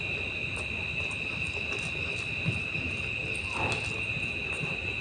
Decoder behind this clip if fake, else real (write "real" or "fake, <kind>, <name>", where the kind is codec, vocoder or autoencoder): real